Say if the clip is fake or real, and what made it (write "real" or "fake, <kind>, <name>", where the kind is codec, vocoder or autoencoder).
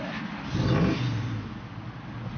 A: real